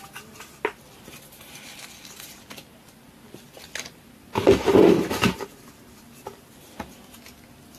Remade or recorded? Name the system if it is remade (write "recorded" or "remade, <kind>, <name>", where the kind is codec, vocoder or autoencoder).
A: recorded